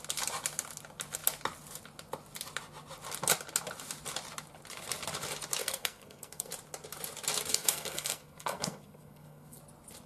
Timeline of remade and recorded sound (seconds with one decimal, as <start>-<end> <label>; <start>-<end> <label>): 0.0-5.6 recorded; 5.6-6.5 remade; 6.5-7.5 recorded; 7.5-9.6 remade; 9.6-10.1 recorded